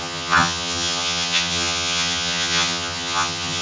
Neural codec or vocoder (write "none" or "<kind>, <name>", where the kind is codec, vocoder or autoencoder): vocoder, HiFi-GAN